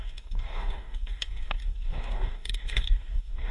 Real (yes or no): no